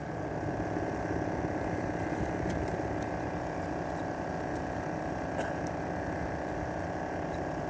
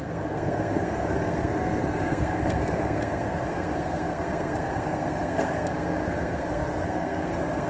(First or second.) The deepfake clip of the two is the second